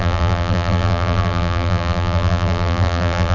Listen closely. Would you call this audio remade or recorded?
remade